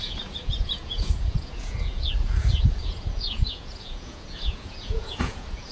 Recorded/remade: remade